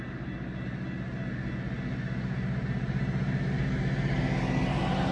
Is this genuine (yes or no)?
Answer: yes